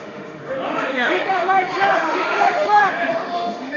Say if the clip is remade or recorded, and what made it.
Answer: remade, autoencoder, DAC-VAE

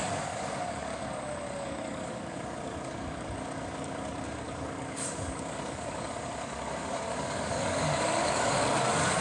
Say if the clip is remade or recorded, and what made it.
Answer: remade, codec, DAC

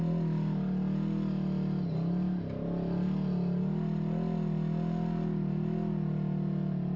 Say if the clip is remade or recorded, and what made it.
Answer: recorded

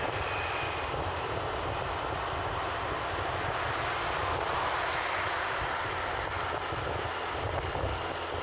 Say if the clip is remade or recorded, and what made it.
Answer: recorded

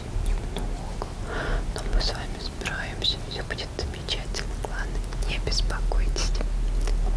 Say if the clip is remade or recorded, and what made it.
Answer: recorded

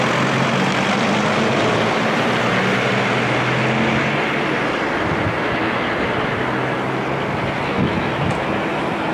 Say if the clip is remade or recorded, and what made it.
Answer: recorded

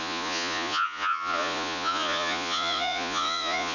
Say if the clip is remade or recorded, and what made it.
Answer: remade, vocoder, Vocos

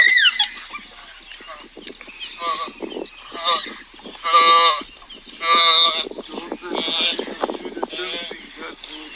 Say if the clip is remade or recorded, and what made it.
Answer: recorded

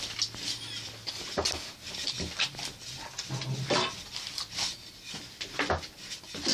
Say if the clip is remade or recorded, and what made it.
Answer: recorded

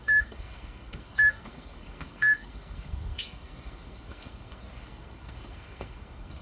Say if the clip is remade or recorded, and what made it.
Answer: remade, codec, SNAC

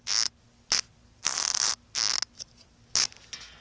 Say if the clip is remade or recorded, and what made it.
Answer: recorded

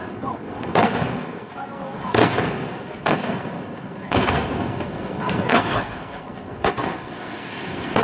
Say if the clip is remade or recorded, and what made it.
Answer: remade, codec, SNAC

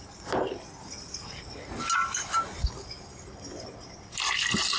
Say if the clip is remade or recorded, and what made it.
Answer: recorded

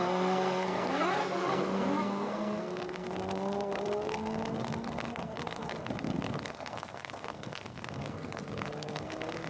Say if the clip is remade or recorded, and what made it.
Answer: remade, codec, SNAC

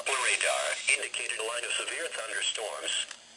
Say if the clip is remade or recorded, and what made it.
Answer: recorded